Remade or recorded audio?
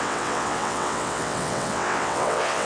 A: remade